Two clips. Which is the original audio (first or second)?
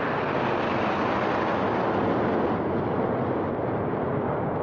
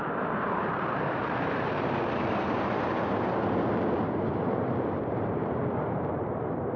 first